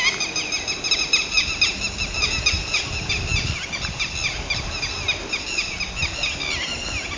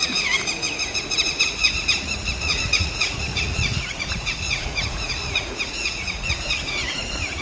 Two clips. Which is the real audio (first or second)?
first